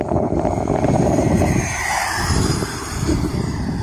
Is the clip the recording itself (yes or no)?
no